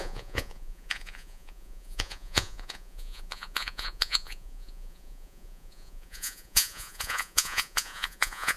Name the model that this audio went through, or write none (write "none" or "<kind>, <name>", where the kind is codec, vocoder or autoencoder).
vocoder, Vocos